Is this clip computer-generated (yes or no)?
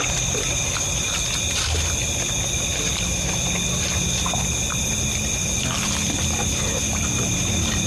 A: no